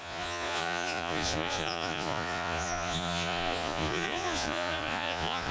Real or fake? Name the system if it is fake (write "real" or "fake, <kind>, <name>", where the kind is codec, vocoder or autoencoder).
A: fake, vocoder, Vocos